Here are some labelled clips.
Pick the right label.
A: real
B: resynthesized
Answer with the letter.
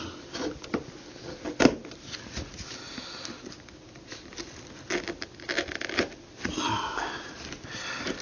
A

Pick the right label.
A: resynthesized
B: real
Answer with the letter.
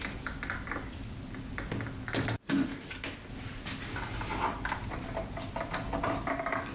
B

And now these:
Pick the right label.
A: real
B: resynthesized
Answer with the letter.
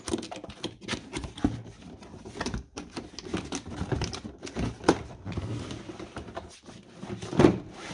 A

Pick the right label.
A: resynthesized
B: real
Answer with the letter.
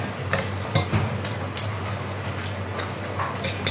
B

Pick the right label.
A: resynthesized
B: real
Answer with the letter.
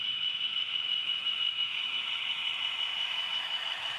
A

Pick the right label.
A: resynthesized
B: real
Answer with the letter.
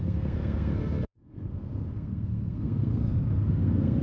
A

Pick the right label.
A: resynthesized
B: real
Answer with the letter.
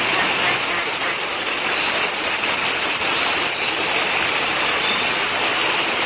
B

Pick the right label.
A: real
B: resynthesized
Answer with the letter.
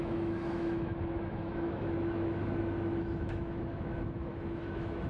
B